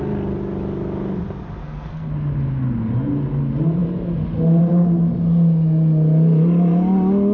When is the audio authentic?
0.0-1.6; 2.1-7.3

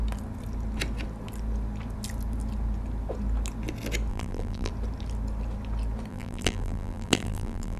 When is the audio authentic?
0.0-4.1; 4.7-6.1